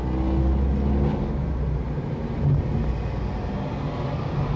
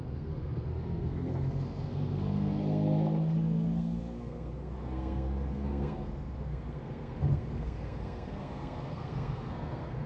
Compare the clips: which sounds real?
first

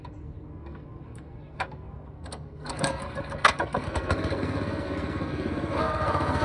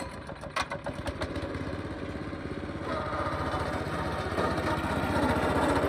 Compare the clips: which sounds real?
second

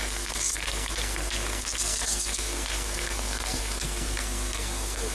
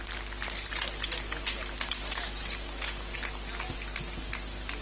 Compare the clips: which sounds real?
second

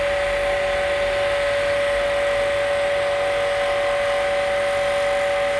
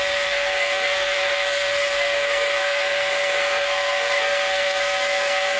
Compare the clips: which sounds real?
first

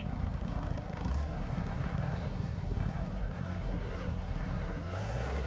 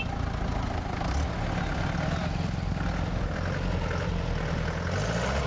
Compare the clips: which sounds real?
second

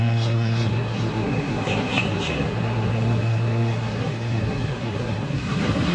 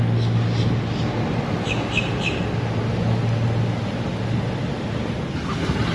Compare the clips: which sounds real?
second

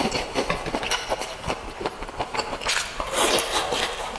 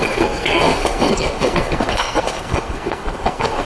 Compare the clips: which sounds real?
first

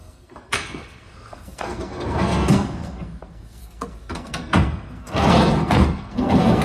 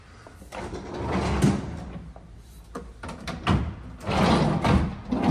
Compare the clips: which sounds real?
second